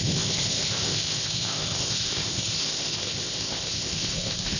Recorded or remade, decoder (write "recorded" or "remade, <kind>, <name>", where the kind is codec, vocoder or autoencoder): remade, codec, ZipCodec